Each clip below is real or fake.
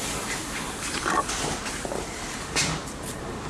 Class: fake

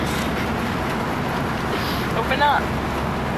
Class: real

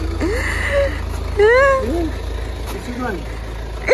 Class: real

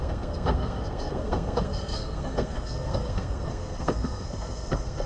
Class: fake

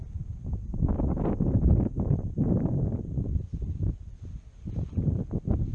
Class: real